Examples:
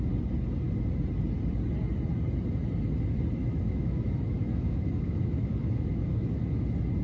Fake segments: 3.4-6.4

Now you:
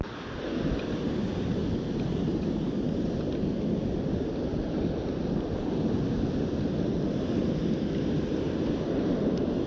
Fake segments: none

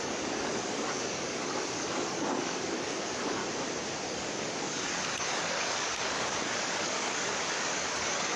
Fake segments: 0.0-3.4; 4.1-8.4

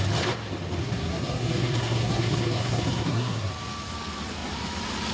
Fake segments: 0.8-3.5

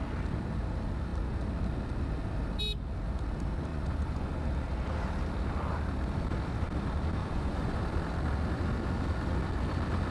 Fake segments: 3.7-4.5; 7.2-7.8

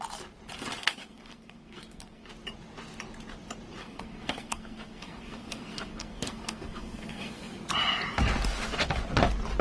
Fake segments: 0.8-2.3; 3.8-7.7